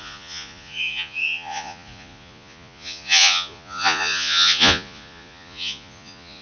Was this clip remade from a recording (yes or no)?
yes